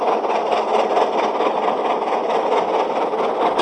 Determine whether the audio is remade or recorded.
recorded